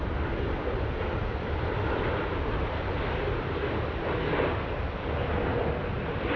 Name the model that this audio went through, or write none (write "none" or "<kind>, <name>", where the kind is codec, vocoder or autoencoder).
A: none